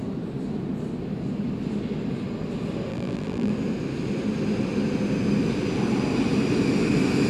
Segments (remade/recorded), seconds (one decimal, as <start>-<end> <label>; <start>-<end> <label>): 0.0-2.9 recorded; 2.9-3.5 remade; 3.5-7.3 recorded